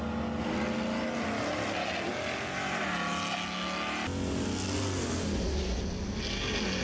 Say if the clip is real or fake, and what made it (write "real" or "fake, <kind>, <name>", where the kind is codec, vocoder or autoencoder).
real